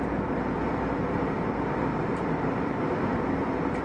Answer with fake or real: real